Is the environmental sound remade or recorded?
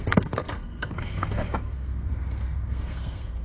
remade